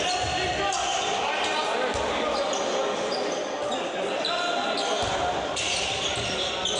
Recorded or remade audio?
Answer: recorded